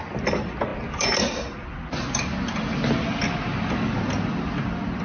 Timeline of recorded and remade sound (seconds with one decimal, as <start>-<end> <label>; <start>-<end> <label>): 0.0-5.0 recorded